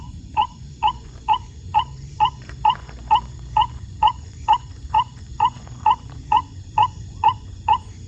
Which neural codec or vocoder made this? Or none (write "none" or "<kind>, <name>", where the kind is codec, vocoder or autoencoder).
vocoder, Vocos